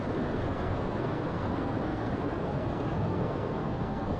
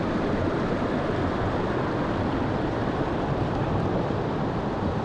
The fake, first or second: first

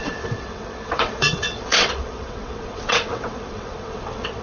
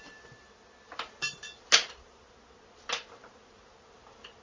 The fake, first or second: first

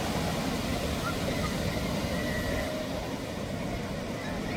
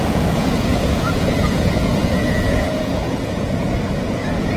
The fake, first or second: second